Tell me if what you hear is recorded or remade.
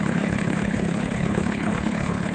remade